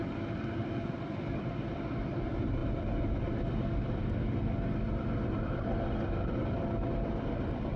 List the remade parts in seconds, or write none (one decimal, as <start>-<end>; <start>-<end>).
0.0-2.6; 5.3-7.8